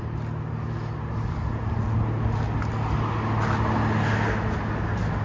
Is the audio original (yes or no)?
yes